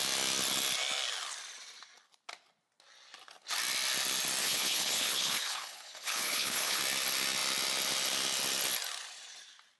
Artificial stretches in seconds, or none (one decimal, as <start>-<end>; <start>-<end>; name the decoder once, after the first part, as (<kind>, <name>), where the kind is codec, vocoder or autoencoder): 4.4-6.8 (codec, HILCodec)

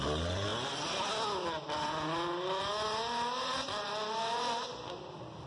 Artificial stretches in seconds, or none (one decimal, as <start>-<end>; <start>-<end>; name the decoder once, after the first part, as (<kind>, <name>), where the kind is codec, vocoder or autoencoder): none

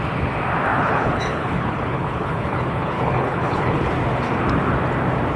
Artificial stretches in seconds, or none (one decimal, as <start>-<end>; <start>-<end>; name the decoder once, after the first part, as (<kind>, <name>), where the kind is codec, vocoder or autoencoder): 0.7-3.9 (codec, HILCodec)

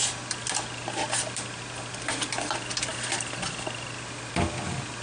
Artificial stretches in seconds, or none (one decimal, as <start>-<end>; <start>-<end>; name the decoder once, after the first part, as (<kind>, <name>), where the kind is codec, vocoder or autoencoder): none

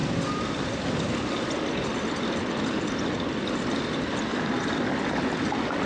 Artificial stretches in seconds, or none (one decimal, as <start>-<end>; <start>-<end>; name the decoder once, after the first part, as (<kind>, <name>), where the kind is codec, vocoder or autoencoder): none

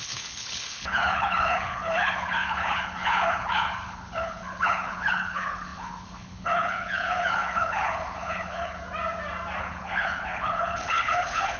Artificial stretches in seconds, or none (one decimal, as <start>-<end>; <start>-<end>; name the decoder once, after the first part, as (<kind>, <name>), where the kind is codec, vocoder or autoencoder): 0.0-8.8 (codec, HILCodec); 9.6-11.6